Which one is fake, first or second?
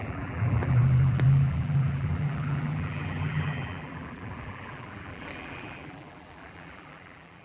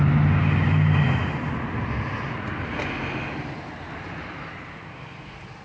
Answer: first